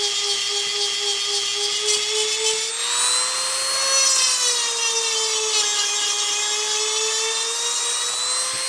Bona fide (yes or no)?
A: yes